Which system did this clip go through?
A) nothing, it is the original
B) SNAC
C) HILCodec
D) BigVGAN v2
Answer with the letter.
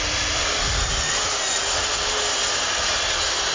A